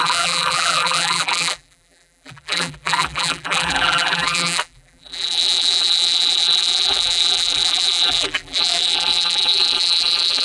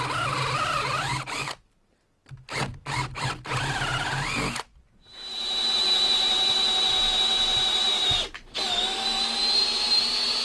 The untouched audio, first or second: second